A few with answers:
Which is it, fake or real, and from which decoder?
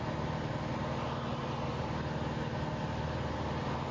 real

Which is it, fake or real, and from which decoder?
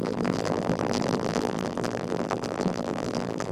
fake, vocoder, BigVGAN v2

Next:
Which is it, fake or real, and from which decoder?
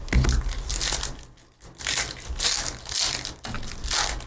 real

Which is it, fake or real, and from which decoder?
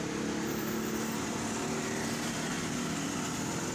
real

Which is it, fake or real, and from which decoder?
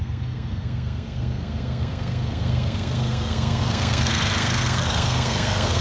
fake, codec, SNAC